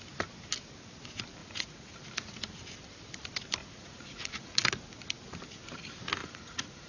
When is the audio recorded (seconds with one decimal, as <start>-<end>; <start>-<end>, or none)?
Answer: 0.0-1.4; 2.0-3.6; 4.7-6.2